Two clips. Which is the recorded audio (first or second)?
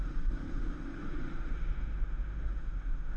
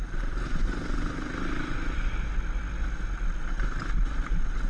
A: second